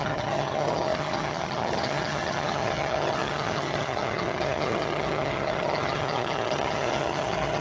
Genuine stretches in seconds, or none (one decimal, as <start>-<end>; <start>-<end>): none